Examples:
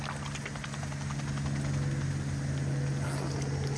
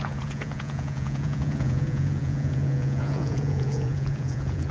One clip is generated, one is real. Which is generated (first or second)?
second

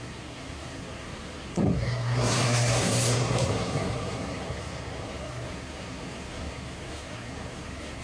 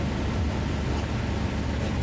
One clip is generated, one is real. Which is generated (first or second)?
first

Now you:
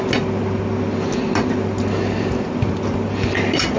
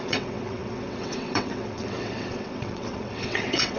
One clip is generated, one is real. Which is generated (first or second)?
second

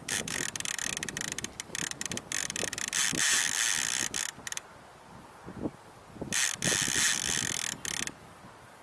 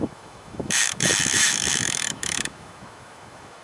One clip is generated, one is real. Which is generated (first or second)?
second